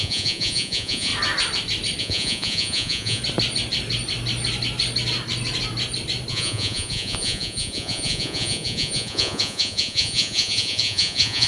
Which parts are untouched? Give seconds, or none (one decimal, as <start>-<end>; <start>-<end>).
1.1-2.0; 3.2-6.3